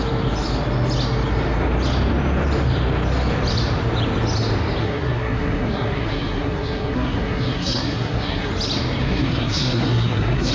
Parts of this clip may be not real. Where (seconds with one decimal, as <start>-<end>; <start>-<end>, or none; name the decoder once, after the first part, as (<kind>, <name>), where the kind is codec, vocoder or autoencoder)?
4.8-8.5 (codec, SNAC); 9.0-10.5